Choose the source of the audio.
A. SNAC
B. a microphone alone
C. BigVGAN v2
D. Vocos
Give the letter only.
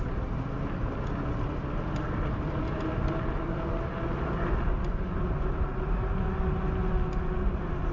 B